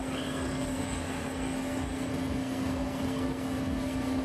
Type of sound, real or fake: fake